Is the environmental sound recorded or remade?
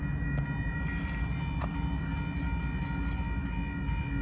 recorded